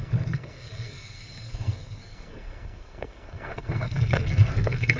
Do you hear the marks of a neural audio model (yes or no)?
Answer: yes